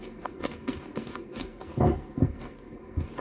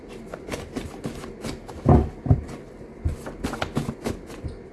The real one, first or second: second